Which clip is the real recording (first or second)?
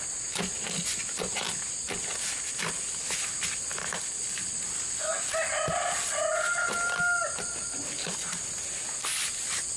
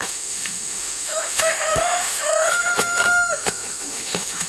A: first